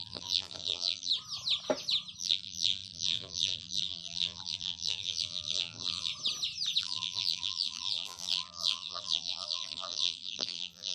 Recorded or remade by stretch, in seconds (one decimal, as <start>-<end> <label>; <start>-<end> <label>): 0.0-1.1 remade; 1.1-2.2 recorded; 2.2-6.1 remade; 6.1-6.8 recorded; 6.8-10.9 remade